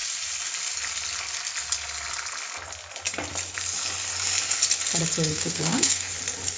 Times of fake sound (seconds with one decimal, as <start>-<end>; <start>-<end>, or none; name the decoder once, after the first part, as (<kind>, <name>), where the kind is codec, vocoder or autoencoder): 5.3-6.1 (codec, SNAC)